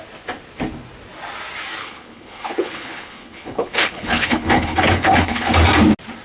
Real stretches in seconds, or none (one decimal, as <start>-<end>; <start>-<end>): 0.0-1.8; 5.5-6.2